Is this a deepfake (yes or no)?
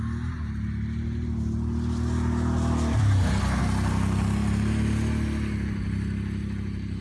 no